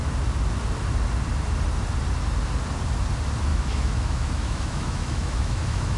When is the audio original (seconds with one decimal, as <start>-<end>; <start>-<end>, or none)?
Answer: 0.0-3.5